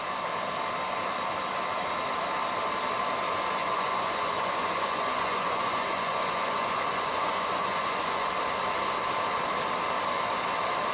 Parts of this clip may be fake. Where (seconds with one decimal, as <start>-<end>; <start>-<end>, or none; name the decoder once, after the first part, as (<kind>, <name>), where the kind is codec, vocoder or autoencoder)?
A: 3.6-8.3 (vocoder, Vocos)